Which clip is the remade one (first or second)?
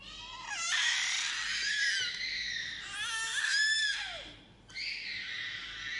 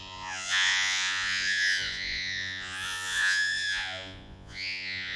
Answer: second